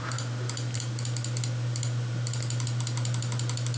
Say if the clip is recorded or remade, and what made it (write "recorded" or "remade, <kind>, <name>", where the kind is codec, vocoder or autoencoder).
recorded